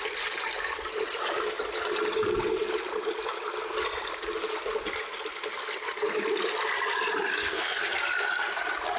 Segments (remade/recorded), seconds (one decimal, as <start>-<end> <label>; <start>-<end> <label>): 0.0-7.4 recorded; 7.4-7.9 remade; 7.9-9.0 recorded